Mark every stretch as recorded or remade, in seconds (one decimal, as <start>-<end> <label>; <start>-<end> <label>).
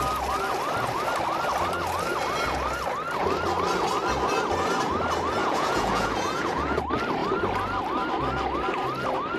0.0-5.4 recorded; 5.4-6.8 remade; 6.8-9.4 recorded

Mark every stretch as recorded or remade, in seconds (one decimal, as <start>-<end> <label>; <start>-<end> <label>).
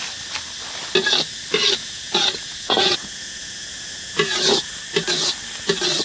0.0-1.8 recorded; 1.8-4.8 remade; 4.8-6.0 recorded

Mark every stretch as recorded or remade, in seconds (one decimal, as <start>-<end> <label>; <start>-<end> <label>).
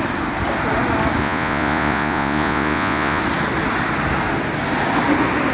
0.0-1.2 recorded; 1.2-3.2 remade; 3.2-5.5 recorded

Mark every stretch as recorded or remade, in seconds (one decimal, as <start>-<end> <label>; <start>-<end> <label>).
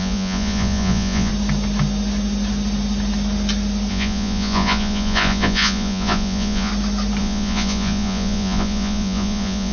0.0-1.3 remade; 1.3-3.9 recorded; 3.9-6.7 remade; 6.7-7.2 recorded; 7.2-9.7 remade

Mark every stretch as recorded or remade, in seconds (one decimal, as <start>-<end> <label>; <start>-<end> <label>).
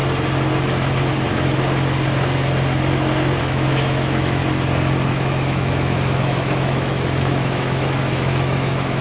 0.0-3.4 recorded; 3.4-4.4 remade; 4.4-5.1 recorded; 5.1-9.0 remade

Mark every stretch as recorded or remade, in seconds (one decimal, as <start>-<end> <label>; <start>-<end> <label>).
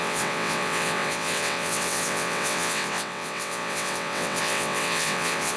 0.0-5.6 remade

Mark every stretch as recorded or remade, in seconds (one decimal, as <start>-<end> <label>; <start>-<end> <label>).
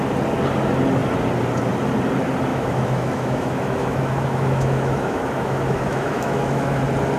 0.0-2.5 recorded; 2.5-6.8 remade; 6.8-7.2 recorded